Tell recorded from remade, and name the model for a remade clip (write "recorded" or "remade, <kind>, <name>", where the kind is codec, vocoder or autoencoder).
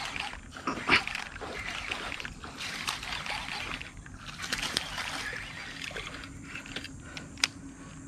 recorded